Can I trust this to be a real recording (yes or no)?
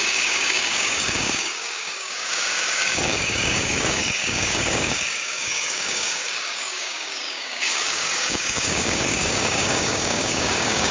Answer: no